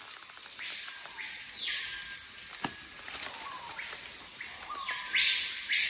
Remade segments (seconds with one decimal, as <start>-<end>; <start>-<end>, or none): none